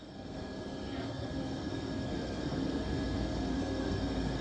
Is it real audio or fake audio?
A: fake